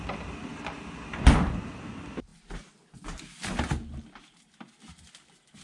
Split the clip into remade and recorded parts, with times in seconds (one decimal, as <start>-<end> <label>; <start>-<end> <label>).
0.0-5.6 recorded